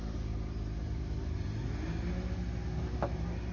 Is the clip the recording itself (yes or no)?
yes